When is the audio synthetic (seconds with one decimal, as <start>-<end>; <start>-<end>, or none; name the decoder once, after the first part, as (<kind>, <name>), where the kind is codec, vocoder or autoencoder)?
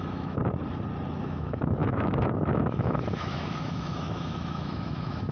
0.0-0.4 (autoencoder, DAC-VAE); 1.2-5.3